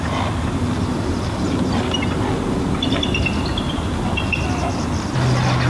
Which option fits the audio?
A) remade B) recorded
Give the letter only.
B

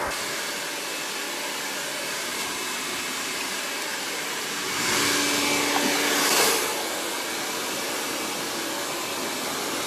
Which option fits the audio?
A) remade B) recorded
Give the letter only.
B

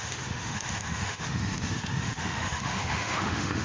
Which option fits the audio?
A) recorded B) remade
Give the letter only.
B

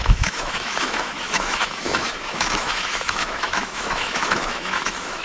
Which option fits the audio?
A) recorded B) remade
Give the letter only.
B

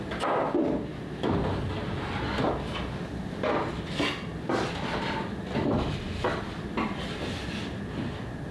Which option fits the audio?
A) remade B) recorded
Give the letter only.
B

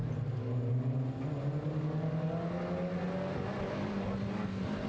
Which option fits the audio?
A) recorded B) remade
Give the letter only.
A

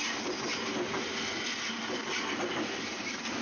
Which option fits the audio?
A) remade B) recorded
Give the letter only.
B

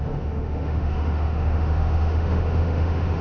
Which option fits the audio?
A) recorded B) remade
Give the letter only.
B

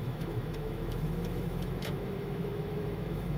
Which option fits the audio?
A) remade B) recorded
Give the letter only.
A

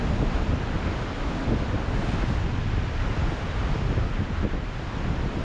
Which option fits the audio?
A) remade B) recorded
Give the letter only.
B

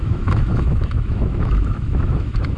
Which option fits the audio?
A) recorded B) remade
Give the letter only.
B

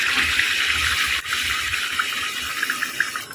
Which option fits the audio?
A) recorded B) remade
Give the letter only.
A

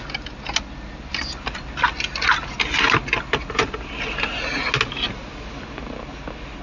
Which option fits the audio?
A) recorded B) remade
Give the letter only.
A